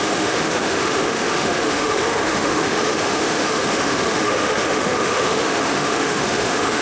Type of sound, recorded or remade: remade